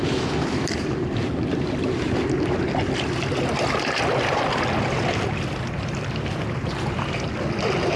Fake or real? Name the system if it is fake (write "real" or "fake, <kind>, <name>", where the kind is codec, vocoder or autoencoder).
real